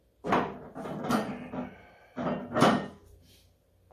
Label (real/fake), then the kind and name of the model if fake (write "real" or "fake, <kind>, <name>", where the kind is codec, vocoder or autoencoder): real